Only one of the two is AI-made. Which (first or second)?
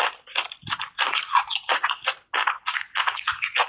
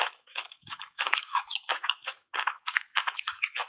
second